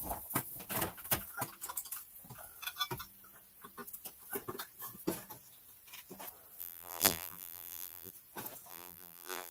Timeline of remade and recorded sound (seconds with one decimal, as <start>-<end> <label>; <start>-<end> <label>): 0.0-6.6 recorded; 6.6-8.1 remade; 8.1-8.7 recorded; 8.7-9.5 remade